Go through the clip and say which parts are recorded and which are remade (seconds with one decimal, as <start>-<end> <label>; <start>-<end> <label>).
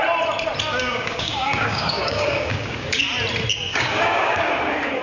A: 0.0-0.7 recorded; 0.7-3.0 remade; 3.0-3.5 recorded; 3.5-4.5 remade; 4.5-5.0 recorded